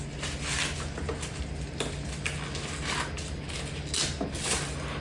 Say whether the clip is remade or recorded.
recorded